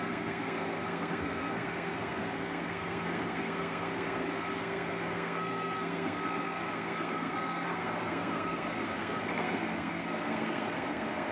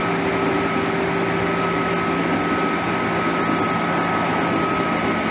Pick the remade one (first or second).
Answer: first